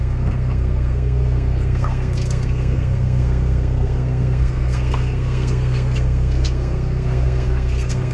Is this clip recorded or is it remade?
remade